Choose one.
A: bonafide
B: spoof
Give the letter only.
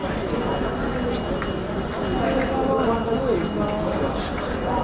A